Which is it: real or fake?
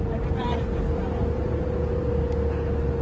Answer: real